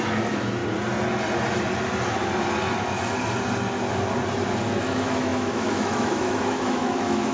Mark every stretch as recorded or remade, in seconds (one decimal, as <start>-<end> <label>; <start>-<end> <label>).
0.0-0.6 remade; 0.6-4.8 recorded; 4.8-7.3 remade